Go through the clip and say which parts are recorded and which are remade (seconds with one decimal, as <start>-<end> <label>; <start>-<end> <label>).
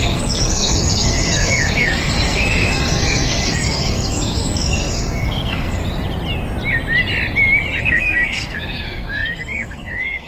0.0-5.8 remade; 5.8-7.8 recorded; 7.8-10.3 remade